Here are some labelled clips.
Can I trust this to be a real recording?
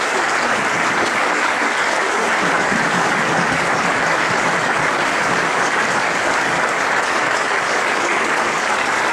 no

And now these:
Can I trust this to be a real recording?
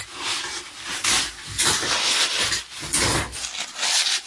yes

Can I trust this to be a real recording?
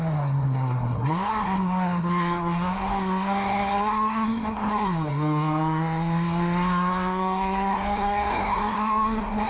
no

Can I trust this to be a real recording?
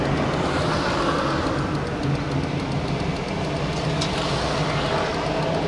yes